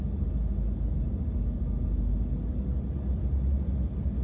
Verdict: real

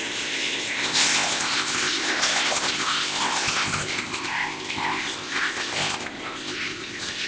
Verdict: fake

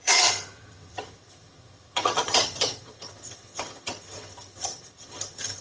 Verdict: fake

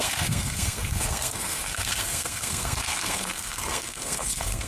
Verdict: fake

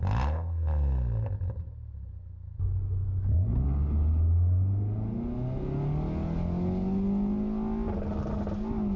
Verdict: real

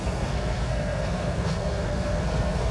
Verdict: fake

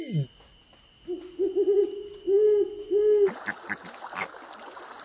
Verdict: real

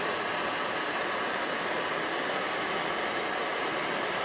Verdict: real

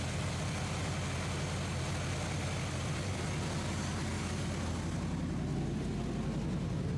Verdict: real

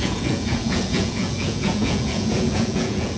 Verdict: fake